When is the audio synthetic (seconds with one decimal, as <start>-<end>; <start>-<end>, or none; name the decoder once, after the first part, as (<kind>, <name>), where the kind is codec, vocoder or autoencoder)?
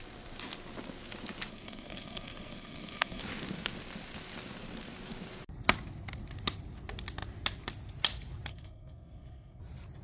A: 1.5-3.2 (codec, SNAC); 8.5-9.6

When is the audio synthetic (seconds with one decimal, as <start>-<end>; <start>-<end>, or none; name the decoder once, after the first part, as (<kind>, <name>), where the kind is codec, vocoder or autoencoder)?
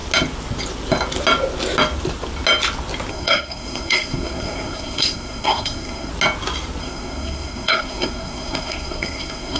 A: 3.1-6.1 (codec, SNAC); 6.8-9.6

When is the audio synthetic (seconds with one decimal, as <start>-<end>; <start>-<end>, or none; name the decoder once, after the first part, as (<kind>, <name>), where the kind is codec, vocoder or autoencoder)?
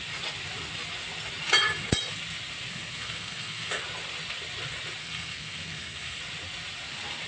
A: 2.7-3.8 (codec, SNAC); 5.0-6.2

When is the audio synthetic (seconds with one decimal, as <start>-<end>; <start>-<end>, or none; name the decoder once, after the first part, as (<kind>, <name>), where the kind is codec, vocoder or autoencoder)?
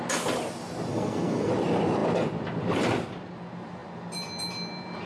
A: 0.9-1.5 (codec, SNAC)